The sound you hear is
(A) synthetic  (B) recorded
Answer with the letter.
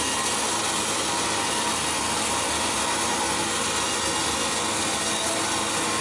B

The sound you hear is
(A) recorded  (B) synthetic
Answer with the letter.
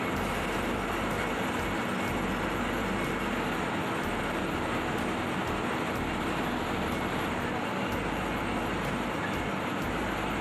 A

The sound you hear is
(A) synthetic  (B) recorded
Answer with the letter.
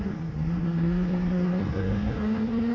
A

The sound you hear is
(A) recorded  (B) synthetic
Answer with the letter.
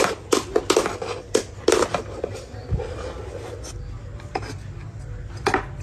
A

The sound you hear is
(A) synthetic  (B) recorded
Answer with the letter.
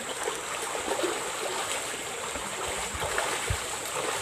B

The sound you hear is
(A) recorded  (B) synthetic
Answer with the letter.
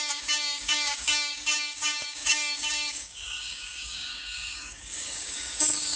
B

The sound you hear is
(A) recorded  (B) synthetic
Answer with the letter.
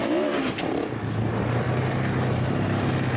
A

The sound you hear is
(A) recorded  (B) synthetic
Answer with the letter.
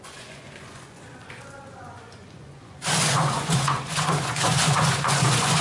B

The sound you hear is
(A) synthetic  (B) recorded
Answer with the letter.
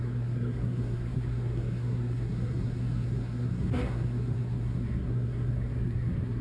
A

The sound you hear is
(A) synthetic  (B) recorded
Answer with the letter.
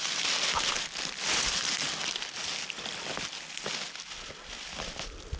B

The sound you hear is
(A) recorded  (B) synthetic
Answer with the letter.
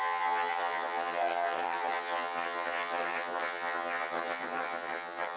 B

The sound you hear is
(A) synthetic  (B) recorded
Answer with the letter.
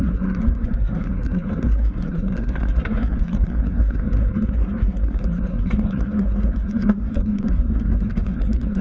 A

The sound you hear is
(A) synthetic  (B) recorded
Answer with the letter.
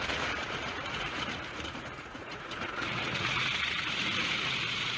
A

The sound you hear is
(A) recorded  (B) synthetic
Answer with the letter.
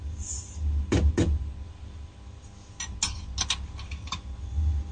A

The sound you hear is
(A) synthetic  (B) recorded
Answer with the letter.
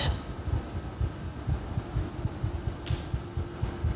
B